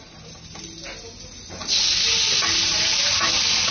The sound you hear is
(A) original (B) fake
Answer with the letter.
A